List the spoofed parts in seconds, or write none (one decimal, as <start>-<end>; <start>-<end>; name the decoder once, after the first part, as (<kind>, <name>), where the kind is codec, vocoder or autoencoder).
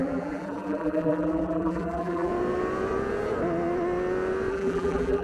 0.0-2.3 (vocoder, BigVGAN v2); 4.5-5.2